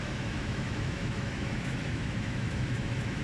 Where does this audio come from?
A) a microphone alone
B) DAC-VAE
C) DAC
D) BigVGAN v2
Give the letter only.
B